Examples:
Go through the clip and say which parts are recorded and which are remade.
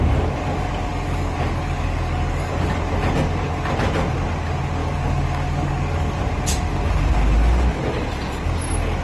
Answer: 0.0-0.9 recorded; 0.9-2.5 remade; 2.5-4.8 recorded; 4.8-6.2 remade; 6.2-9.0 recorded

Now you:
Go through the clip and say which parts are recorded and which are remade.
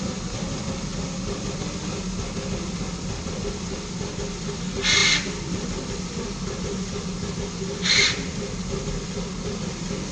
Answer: 0.0-10.1 recorded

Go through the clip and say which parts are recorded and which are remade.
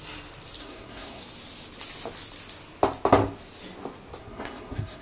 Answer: 0.0-0.6 recorded; 0.6-1.2 remade; 1.2-4.2 recorded; 4.2-5.0 remade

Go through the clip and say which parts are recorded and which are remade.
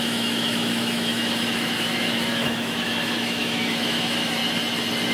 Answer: 0.0-4.4 remade; 4.4-5.1 recorded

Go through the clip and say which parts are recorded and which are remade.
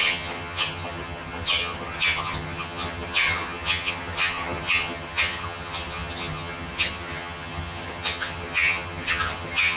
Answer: 0.0-9.8 remade